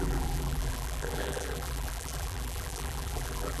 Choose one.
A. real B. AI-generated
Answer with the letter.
B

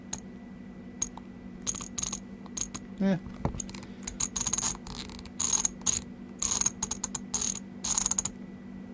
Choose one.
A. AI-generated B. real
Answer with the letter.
B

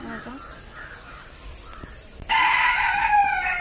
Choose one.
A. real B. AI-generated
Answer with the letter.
B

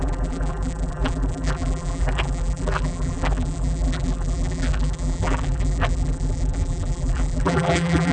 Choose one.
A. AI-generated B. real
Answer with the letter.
A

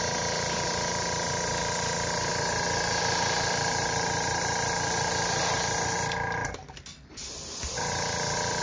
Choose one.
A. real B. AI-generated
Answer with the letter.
A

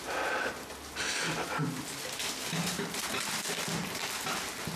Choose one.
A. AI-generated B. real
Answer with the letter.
B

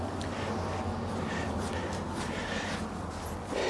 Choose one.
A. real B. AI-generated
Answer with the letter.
A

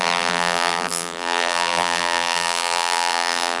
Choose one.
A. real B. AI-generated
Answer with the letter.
B